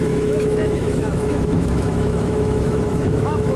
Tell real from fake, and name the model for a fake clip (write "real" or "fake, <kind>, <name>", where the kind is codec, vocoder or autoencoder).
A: fake, autoencoder, DAC-VAE